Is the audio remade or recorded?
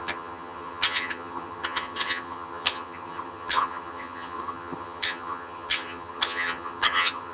remade